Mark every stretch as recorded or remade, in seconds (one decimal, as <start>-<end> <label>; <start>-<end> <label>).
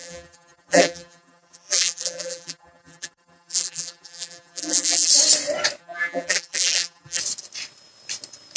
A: 0.0-5.1 remade; 5.1-5.8 recorded; 5.8-7.2 remade; 7.2-8.6 recorded